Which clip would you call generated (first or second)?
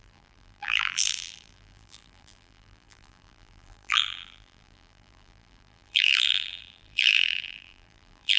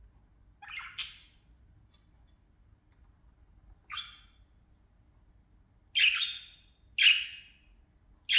first